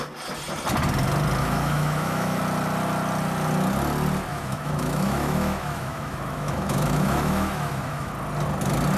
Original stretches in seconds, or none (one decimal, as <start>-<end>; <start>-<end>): 0.0-1.4; 2.4-4.3; 8.1-9.0